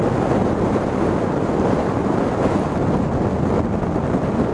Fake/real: real